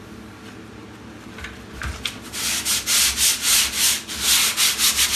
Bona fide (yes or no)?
yes